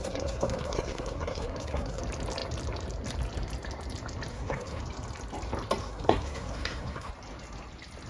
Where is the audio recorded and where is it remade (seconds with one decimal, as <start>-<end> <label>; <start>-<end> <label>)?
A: 0.0-2.0 remade; 2.0-4.3 recorded; 4.3-4.8 remade; 4.8-5.8 recorded; 5.8-7.1 remade; 7.1-8.1 recorded